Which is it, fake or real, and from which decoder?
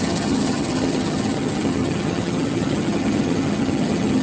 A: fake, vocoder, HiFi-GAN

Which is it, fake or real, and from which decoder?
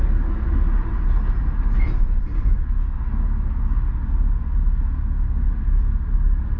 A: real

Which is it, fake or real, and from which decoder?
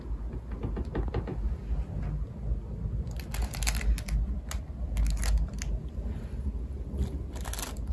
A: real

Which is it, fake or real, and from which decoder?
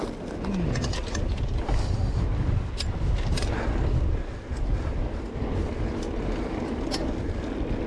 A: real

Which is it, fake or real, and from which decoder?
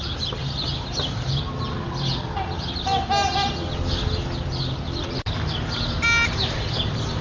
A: real